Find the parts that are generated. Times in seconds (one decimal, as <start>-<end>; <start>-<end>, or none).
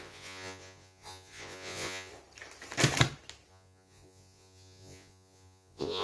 0.0-2.1; 3.5-6.0